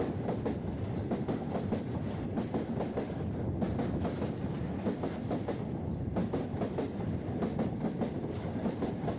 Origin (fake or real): real